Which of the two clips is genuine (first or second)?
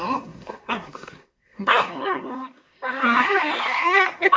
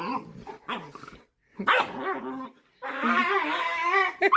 second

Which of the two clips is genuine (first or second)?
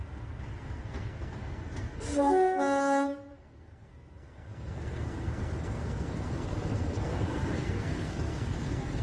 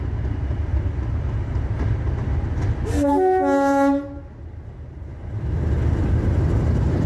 second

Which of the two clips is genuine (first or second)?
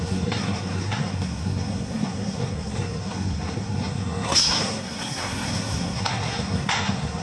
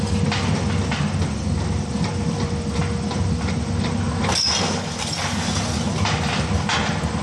second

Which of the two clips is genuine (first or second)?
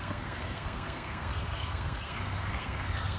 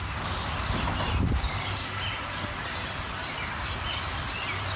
second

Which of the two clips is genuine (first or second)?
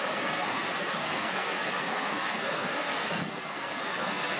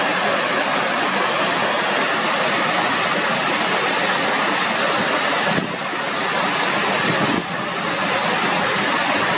second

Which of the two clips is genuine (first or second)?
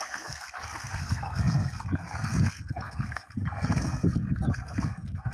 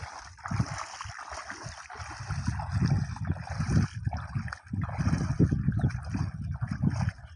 second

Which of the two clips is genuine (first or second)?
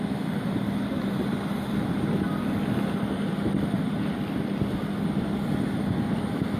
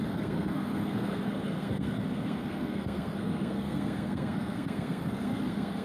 first